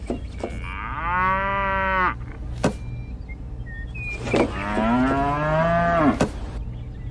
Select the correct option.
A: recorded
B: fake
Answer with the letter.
A